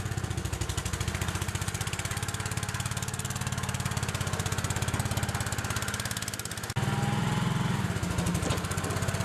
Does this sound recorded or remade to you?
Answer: recorded